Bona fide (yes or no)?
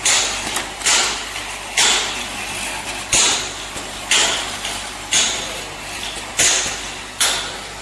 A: yes